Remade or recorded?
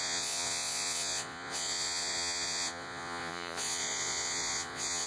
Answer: remade